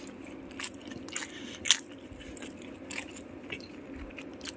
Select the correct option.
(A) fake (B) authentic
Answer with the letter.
B